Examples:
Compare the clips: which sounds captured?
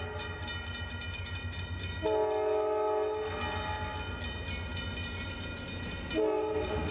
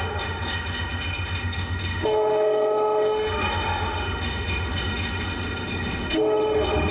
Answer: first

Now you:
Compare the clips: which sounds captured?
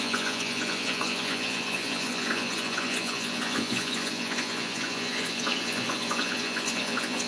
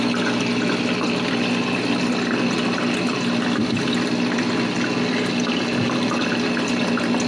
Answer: second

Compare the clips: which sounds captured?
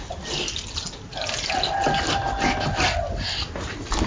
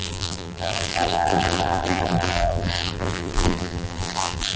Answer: first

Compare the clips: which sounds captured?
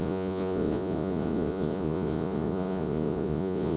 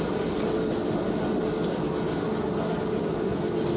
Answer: second